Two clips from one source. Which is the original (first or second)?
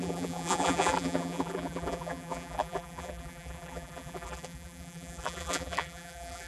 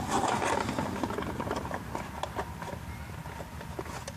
second